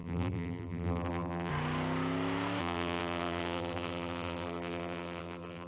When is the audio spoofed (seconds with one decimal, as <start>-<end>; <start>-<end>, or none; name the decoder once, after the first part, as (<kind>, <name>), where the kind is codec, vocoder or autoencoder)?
0.0-1.5 (vocoder, BigVGAN v2); 2.6-5.7